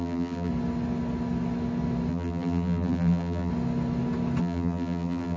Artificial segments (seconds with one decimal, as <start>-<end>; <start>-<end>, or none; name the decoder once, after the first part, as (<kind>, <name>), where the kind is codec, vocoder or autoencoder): 0.0-0.5 (vocoder, BigVGAN v2); 2.1-3.5; 4.4-5.4